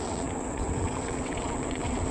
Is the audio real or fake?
fake